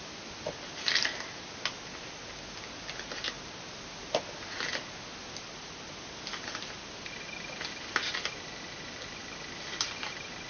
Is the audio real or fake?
real